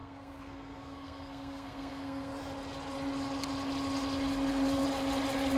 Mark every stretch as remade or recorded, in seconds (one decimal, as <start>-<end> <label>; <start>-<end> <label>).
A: 0.0-2.3 remade; 2.3-5.6 recorded